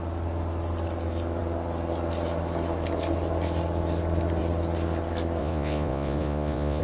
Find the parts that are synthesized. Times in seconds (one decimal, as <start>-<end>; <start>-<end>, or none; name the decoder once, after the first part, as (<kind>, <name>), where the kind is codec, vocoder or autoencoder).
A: 5.4-6.8 (vocoder, Vocos)